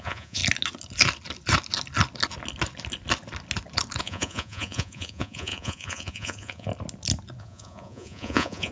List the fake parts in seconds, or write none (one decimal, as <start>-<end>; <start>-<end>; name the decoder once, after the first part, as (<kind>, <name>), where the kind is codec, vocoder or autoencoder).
0.0-0.4 (vocoder, Vocos); 4.0-6.7; 7.4-8.7